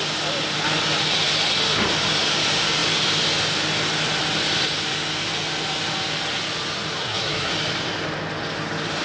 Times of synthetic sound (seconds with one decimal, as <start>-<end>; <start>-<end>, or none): 7.0-7.5